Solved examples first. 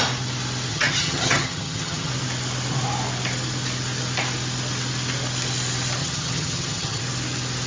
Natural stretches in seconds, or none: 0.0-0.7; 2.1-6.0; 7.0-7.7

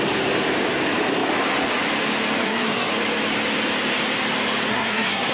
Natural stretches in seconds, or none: 0.0-2.4; 2.9-4.7

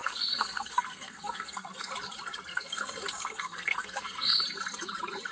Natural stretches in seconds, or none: 1.9-2.5; 4.4-5.3

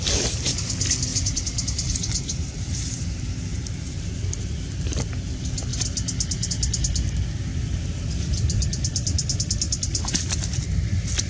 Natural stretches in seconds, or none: 0.0-1.1; 5.1-11.3